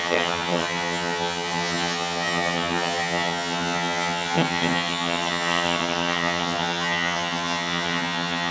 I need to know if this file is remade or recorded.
remade